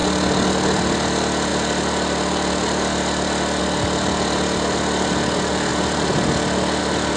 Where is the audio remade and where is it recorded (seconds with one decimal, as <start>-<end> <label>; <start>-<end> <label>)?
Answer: 0.0-7.2 recorded